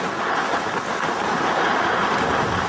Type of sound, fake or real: real